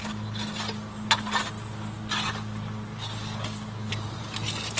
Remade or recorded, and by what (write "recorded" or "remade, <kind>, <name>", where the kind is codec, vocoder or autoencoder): recorded